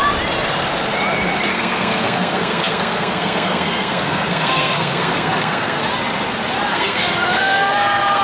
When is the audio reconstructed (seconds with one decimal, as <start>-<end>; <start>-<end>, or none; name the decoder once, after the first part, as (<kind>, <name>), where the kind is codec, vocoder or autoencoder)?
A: 1.5-5.8 (codec, SNAC); 6.7-8.2